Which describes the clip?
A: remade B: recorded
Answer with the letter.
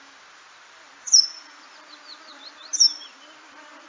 A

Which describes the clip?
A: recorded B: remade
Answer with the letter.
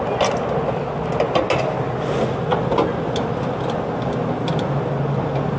A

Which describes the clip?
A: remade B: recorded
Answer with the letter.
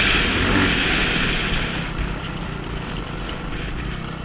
B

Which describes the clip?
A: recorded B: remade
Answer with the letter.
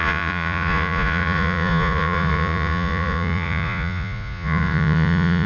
B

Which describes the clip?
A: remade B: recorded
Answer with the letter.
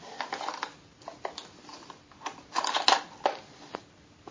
B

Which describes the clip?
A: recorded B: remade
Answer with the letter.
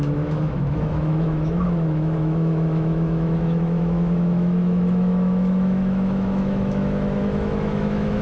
B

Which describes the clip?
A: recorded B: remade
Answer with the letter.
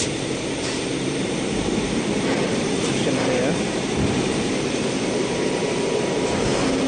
B